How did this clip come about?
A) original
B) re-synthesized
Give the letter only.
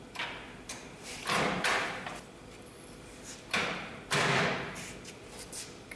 B